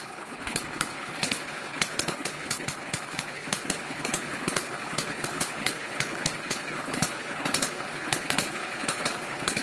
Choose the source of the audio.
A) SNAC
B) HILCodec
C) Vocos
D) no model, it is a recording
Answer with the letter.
B